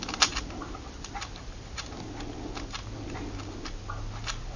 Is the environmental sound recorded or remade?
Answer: recorded